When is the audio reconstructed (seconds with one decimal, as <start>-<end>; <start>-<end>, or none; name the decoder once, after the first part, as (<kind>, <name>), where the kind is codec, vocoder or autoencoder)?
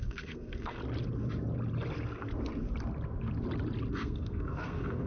0.0-0.8 (codec, SNAC); 3.9-5.1